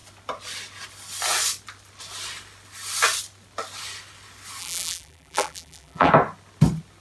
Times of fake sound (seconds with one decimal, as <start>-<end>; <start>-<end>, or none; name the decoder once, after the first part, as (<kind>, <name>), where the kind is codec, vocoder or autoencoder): 4.6-6.1 (vocoder, BigVGAN v2)